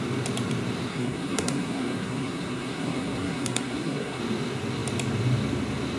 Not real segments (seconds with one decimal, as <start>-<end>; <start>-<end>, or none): 0.9-4.2

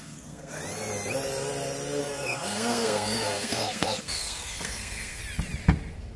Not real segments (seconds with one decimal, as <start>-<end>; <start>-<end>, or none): 0.0-0.6; 2.0-5.2

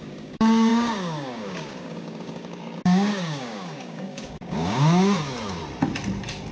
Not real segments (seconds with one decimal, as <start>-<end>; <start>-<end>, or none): 0.0-5.6

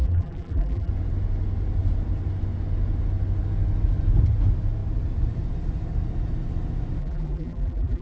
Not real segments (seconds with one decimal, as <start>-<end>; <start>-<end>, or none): 0.0-0.9; 7.0-8.0

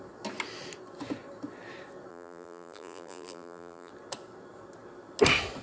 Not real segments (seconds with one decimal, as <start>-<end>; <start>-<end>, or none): 2.1-3.9

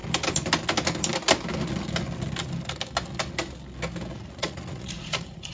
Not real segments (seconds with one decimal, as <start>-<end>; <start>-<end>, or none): 4.1-5.5